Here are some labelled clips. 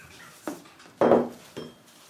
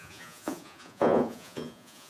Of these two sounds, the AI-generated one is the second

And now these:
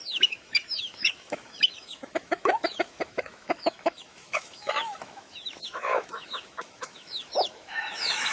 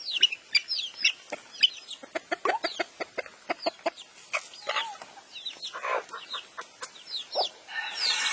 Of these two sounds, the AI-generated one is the first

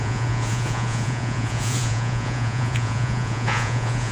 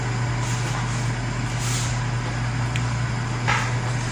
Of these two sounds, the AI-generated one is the first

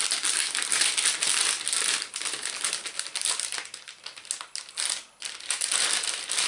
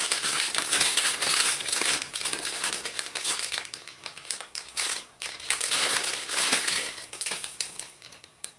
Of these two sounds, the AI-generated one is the second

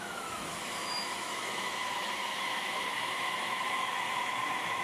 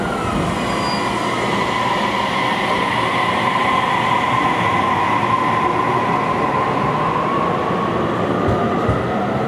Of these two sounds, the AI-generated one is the first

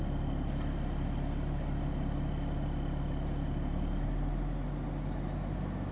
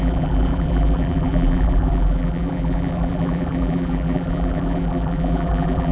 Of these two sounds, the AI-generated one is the second